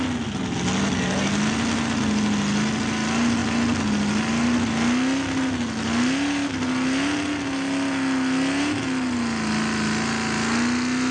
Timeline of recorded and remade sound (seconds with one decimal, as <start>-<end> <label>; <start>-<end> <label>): 0.0-11.1 recorded